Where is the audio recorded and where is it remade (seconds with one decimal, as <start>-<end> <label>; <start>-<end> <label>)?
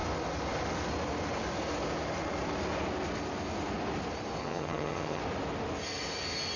0.0-4.4 recorded; 4.4-5.2 remade; 5.2-6.6 recorded